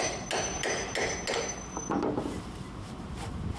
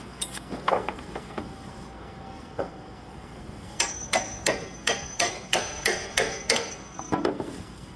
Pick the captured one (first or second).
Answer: first